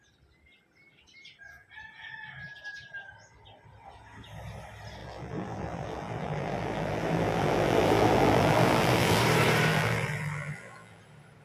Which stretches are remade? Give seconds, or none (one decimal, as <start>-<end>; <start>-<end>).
5.0-9.2; 9.7-11.0